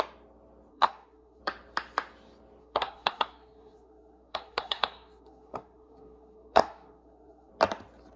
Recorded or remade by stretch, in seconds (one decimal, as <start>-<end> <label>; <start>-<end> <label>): 0.0-0.7 recorded; 0.7-1.4 remade; 1.4-2.6 recorded; 2.6-7.5 remade; 7.5-8.2 recorded